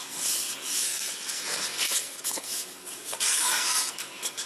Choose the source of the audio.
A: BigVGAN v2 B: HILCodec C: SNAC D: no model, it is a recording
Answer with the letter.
C